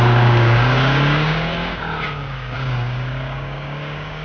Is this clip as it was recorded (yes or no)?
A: no